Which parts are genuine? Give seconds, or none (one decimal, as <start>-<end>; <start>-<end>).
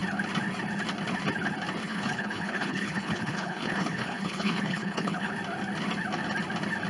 0.0-1.8; 5.3-6.9